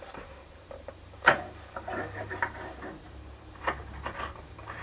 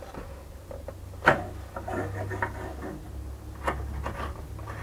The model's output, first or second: first